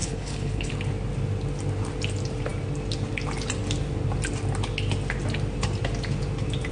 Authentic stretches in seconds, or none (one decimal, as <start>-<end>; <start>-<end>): 0.7-6.7